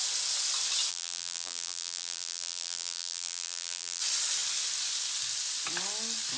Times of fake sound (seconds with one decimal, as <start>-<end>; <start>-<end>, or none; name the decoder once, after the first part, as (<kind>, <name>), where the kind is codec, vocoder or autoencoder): 0.9-4.0 (vocoder, BigVGAN v2)